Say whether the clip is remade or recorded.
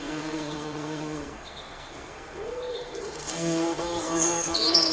remade